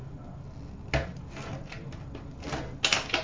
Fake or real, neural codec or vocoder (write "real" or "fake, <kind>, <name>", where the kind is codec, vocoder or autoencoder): real